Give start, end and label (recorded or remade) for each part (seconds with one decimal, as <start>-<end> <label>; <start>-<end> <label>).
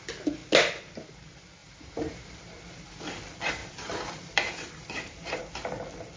0.0-1.6 recorded; 1.6-3.0 remade; 3.0-3.6 recorded; 3.6-5.4 remade; 5.4-6.2 recorded